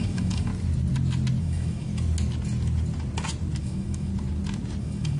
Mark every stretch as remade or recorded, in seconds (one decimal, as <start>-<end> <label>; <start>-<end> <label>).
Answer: 0.0-0.5 remade; 0.5-1.4 recorded; 1.4-1.9 remade; 1.9-3.6 recorded; 3.6-4.1 remade; 4.1-4.8 recorded; 4.8-5.2 remade